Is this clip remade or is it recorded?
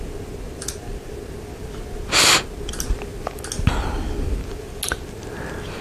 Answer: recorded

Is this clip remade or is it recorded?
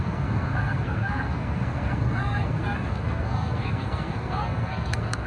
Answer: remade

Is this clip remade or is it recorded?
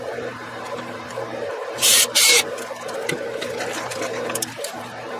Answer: remade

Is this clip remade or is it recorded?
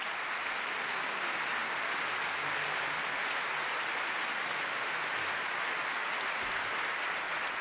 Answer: recorded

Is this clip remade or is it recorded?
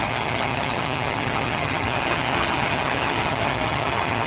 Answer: remade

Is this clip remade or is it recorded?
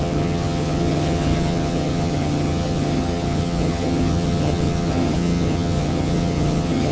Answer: remade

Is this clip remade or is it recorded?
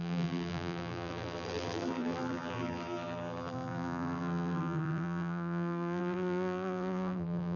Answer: remade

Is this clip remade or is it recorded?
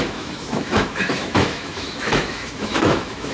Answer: remade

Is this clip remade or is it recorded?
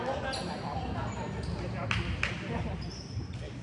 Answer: recorded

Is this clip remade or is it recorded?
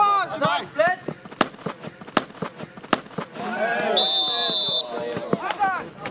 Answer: recorded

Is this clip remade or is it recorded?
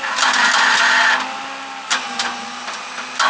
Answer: recorded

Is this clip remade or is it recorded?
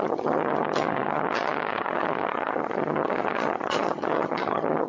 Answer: remade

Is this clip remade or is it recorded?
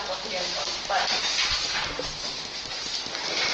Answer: recorded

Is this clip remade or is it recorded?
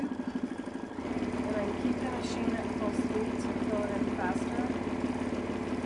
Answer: recorded